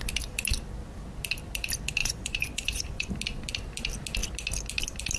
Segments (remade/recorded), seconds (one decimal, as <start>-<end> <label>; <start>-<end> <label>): 0.0-2.0 recorded; 2.0-3.1 remade; 3.1-5.2 recorded